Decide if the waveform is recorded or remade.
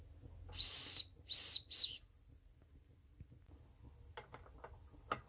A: recorded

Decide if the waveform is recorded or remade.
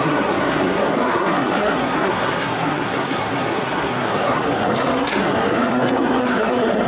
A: remade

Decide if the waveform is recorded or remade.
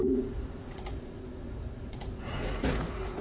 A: remade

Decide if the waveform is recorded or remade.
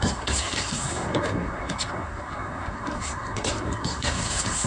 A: remade